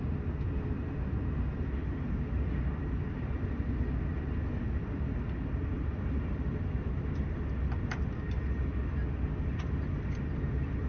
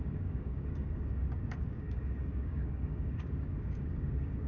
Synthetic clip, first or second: second